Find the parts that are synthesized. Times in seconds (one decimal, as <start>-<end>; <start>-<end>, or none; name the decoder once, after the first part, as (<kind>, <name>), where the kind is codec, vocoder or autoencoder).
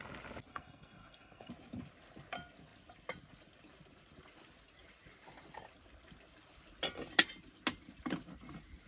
0.5-1.5 (codec, SNAC)